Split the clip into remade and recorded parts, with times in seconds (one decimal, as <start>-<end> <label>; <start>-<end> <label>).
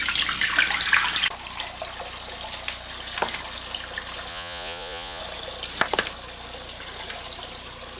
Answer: 0.0-4.3 recorded; 4.3-5.2 remade; 5.2-8.0 recorded